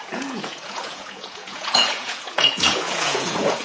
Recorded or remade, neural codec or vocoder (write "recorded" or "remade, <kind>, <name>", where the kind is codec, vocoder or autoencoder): remade, vocoder, Vocos